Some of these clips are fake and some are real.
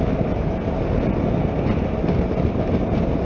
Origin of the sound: real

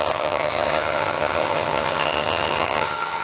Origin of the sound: fake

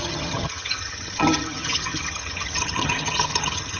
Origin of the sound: fake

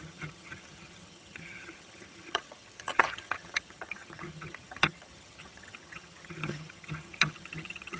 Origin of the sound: fake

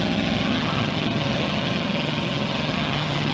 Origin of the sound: fake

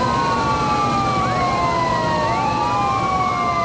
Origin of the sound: real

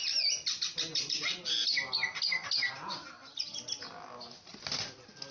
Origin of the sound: real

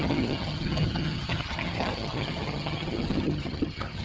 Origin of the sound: fake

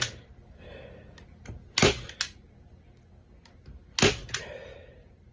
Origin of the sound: real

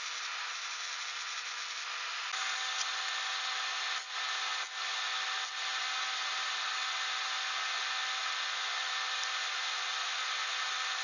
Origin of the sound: real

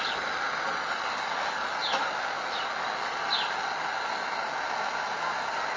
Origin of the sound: real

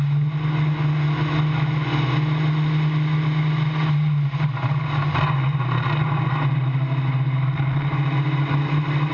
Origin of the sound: real